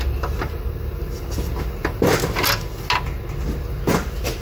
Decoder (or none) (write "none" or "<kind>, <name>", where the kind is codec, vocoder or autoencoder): none